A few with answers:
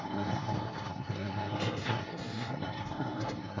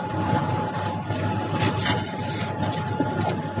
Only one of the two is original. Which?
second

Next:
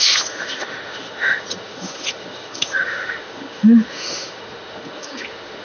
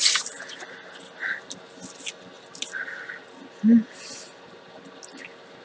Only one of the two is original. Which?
second